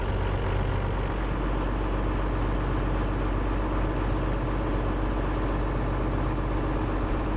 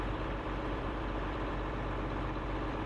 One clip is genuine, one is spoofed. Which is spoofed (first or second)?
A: second